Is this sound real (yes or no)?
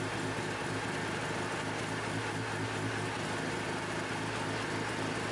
yes